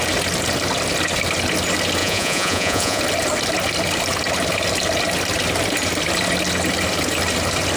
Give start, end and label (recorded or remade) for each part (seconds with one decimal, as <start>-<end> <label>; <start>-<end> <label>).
0.0-2.0 recorded; 2.0-3.0 remade; 3.0-7.8 recorded